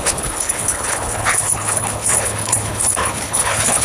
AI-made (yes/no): yes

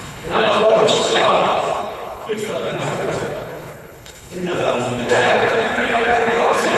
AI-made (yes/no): yes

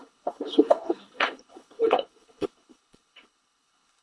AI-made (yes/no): yes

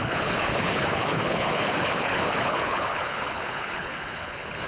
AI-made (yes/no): yes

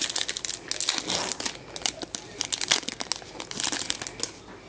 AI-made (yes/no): no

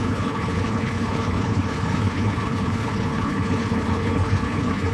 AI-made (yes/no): yes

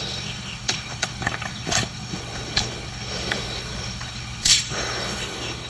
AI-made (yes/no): yes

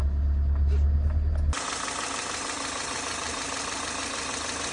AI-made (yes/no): no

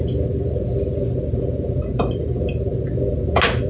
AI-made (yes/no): no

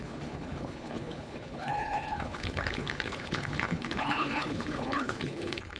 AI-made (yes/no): yes